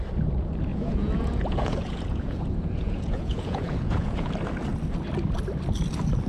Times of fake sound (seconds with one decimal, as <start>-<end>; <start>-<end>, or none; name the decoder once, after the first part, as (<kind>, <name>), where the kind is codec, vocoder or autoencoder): 0.7-4.3 (vocoder, Vocos)